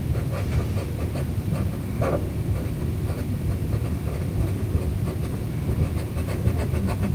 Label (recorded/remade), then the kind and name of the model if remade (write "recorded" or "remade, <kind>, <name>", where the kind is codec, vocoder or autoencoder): recorded